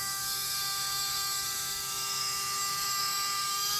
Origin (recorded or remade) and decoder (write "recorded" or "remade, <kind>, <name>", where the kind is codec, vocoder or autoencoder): remade, codec, DAC